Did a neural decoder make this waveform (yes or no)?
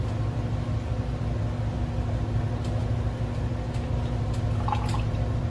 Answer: no